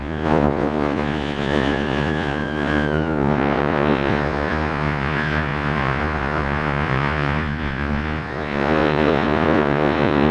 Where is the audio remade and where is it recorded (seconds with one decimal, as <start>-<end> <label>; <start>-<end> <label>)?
0.0-10.3 remade